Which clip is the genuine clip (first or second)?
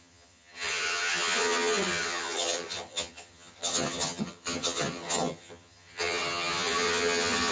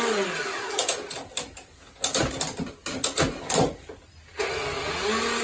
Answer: second